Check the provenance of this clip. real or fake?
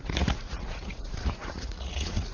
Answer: fake